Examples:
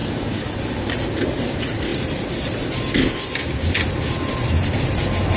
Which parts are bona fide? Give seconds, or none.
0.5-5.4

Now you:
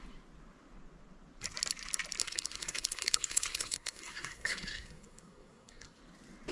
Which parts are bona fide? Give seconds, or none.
0.0-2.2; 6.0-6.5